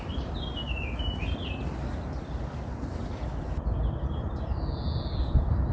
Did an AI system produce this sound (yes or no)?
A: no